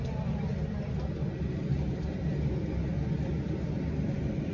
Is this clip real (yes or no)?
yes